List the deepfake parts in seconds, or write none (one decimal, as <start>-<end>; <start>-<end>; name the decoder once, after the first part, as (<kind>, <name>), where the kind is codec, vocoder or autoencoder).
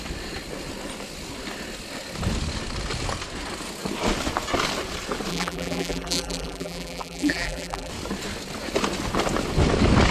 5.3-7.9 (vocoder, BigVGAN v2)